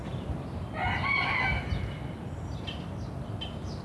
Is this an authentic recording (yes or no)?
yes